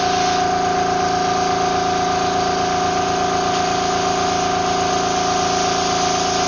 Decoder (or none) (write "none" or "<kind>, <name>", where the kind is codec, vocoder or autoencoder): none